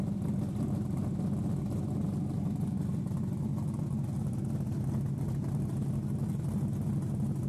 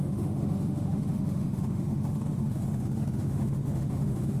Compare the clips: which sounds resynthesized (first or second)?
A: second